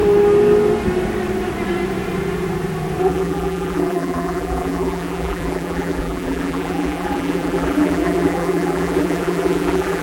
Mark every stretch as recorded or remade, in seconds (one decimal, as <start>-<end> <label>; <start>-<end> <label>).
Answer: 0.0-3.0 recorded; 3.0-10.0 remade